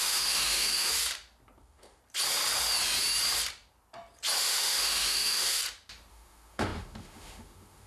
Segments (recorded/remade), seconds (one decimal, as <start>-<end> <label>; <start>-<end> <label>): 0.0-0.9 remade; 0.9-1.6 recorded; 1.6-2.0 remade; 2.0-4.4 recorded; 4.4-5.6 remade; 5.6-6.1 recorded; 6.1-7.9 remade